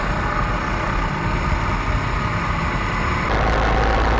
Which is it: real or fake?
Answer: real